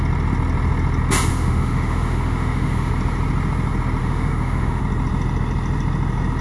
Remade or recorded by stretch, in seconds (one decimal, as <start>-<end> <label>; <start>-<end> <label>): 0.0-1.3 recorded; 1.3-2.9 remade; 2.9-4.0 recorded; 4.0-4.8 remade; 4.8-6.4 recorded